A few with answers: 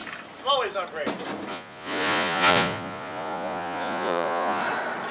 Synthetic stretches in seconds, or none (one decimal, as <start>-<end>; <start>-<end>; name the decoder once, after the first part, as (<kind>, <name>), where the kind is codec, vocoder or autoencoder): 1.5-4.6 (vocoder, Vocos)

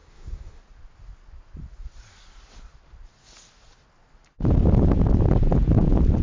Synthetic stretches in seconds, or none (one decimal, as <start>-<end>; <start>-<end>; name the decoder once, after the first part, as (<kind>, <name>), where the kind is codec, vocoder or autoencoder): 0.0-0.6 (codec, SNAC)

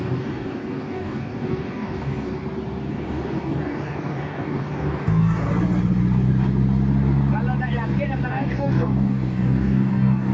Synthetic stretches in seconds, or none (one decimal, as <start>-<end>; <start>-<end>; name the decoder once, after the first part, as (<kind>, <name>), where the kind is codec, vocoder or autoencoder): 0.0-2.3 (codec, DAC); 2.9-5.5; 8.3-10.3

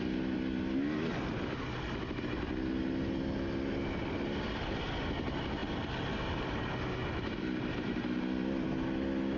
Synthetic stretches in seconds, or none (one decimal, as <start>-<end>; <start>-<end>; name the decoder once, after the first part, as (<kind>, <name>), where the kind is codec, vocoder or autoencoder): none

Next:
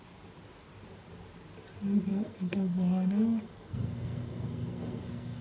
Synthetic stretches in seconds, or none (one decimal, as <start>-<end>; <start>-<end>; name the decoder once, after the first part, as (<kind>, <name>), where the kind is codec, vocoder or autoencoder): 2.1-5.4 (codec, SNAC)

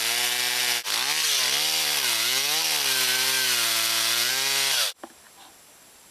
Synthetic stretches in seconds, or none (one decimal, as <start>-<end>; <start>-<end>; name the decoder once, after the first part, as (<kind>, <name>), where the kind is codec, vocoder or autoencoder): none

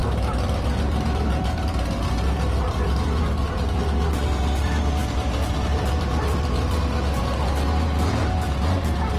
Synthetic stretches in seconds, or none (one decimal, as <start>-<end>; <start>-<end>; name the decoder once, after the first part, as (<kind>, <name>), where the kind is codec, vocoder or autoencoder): 0.0-3.6 (vocoder, BigVGAN v2)